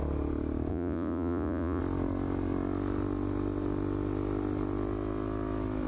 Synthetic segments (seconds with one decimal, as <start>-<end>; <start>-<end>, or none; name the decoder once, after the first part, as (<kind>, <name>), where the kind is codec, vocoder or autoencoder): 0.7-1.8 (vocoder, Vocos)